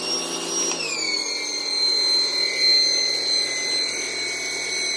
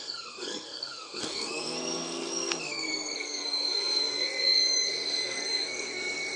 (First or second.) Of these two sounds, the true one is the first